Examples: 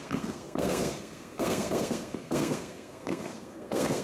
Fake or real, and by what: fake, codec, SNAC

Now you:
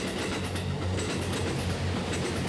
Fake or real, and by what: real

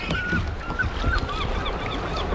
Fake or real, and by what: real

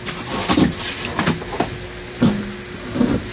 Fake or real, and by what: real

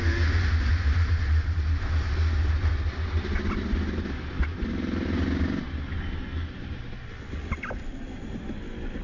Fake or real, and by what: real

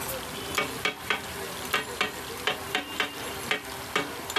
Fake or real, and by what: real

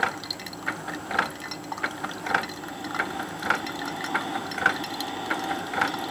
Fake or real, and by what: real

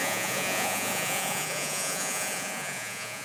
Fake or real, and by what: fake, vocoder, Vocos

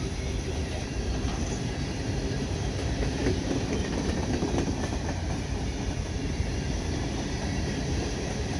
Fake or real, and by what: fake, vocoder, BigVGAN v2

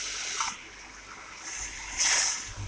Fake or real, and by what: fake, vocoder, BigVGAN v2